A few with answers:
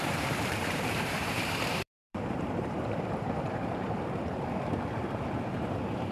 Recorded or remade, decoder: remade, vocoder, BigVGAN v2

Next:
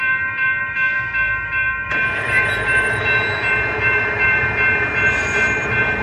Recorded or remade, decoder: remade, vocoder, BigVGAN v2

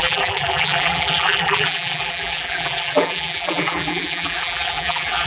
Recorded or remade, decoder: remade, vocoder, BigVGAN v2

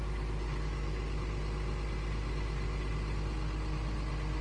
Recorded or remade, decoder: recorded